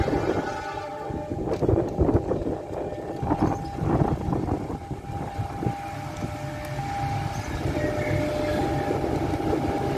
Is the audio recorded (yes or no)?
yes